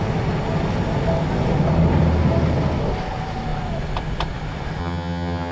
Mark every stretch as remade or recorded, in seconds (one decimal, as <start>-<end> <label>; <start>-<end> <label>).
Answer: 0.0-4.8 recorded; 4.8-5.5 remade